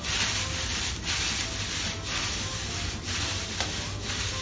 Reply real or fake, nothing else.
real